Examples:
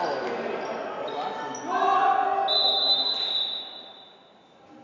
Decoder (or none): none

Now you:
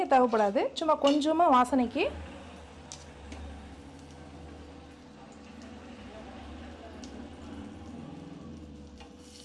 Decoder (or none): none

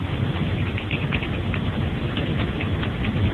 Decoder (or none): none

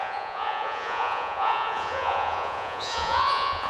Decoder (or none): vocoder, Vocos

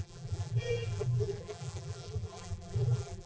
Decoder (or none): vocoder, BigVGAN v2